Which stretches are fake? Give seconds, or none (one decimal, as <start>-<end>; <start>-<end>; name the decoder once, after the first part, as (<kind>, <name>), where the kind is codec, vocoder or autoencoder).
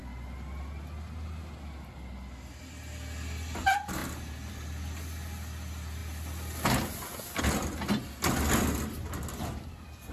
none